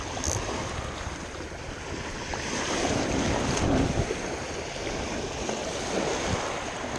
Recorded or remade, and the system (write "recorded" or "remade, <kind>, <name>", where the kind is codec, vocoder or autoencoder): recorded